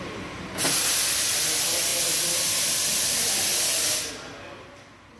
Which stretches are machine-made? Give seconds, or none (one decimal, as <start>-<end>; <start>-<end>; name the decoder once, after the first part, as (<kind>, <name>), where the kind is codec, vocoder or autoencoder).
none